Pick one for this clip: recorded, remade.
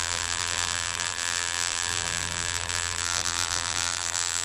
remade